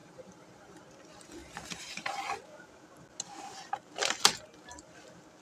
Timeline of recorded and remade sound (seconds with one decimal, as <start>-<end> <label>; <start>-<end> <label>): 0.0-0.8 remade; 0.8-1.4 recorded; 1.4-2.1 remade; 2.1-5.4 recorded